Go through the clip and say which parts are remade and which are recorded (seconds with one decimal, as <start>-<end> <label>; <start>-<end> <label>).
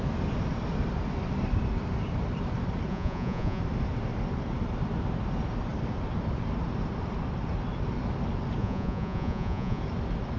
0.0-2.9 recorded; 2.9-3.6 remade; 3.6-8.6 recorded; 8.6-9.8 remade; 9.8-10.4 recorded